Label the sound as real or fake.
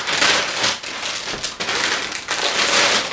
real